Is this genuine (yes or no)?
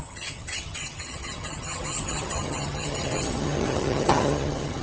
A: no